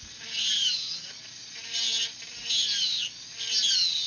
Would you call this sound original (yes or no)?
yes